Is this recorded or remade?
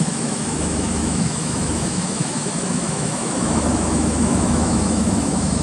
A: remade